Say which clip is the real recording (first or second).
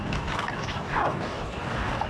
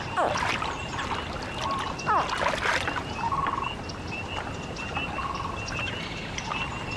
second